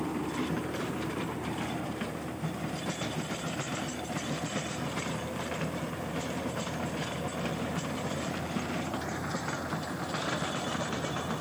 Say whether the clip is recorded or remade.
remade